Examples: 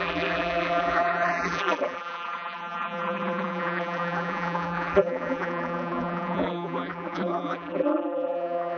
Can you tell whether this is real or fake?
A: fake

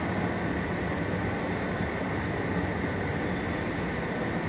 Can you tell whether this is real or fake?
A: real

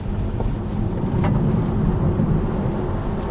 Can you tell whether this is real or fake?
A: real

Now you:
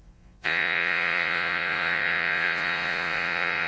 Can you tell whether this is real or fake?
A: fake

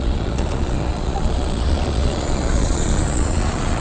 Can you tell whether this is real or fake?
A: fake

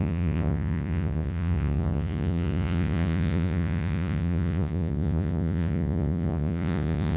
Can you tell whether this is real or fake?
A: fake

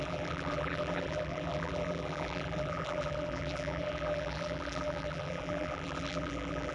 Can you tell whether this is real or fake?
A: fake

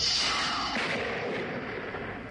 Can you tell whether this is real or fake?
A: real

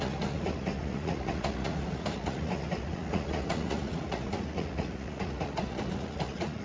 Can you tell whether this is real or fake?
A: fake